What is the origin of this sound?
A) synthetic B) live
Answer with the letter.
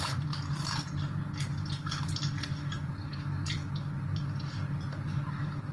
B